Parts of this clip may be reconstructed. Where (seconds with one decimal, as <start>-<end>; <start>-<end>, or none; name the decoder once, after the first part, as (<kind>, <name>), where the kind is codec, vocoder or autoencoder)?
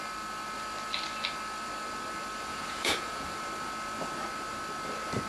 2.5-3.4 (vocoder, Vocos)